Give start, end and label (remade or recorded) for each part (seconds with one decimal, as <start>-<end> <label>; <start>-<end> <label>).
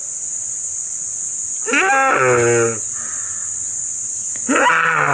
0.0-3.4 recorded; 3.4-4.1 remade; 4.1-5.1 recorded